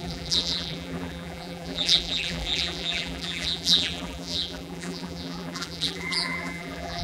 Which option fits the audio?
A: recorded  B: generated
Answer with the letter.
B